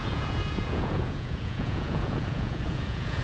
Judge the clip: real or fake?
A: fake